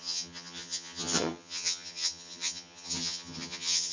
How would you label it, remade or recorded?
remade